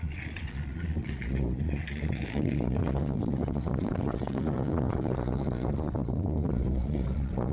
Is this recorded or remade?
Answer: remade